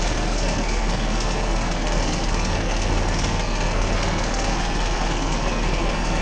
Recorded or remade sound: remade